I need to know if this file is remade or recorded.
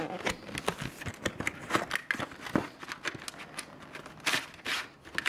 recorded